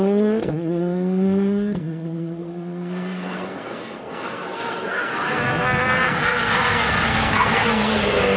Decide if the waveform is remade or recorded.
remade